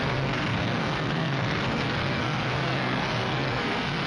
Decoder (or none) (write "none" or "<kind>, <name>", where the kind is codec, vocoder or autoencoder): codec, SNAC